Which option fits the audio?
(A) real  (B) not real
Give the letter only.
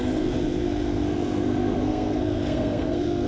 B